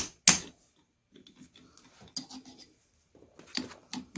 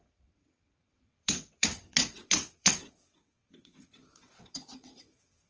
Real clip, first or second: first